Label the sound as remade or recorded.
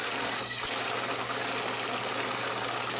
recorded